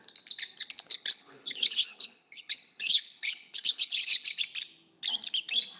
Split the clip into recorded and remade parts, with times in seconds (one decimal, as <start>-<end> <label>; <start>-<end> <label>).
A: 0.0-0.9 recorded; 0.9-4.4 remade; 4.4-5.8 recorded